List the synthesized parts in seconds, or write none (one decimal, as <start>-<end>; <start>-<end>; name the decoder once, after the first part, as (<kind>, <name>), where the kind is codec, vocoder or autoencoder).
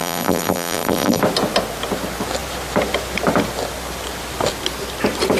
0.0-1.2 (vocoder, BigVGAN v2)